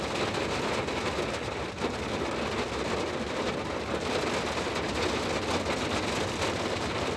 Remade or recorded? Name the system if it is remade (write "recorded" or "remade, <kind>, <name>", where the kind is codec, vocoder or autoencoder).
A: recorded